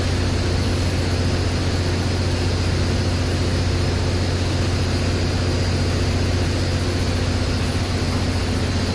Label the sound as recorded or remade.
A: recorded